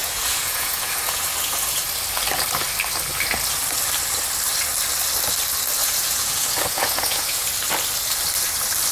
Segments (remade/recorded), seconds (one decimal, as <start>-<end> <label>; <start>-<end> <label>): 0.0-1.8 remade; 1.8-5.8 recorded; 5.8-7.5 remade; 7.5-8.9 recorded